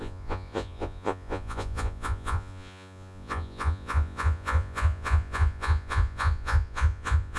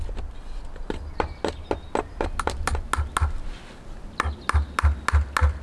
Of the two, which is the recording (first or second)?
second